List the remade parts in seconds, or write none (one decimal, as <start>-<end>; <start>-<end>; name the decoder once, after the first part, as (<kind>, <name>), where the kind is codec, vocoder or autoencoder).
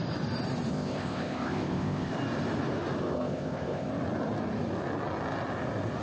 0.7-2.1 (codec, ZipCodec); 3.0-3.9